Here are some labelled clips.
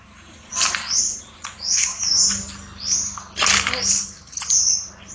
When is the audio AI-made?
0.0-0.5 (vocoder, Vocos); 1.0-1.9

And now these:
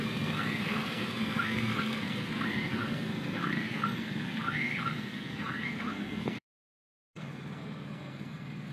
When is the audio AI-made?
0.0-8.7 (codec, SNAC)

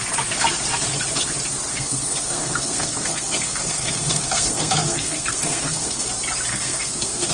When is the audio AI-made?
1.7-6.1 (codec, SNAC); 6.5-7.3